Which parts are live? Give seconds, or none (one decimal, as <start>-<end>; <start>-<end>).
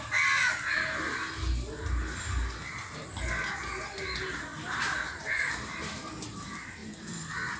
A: 0.0-4.5; 5.5-7.6